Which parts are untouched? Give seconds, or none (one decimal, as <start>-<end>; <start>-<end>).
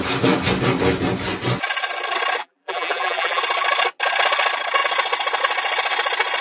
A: 0.0-2.4; 3.4-6.4